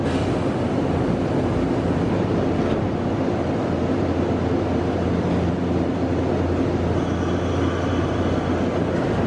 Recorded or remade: recorded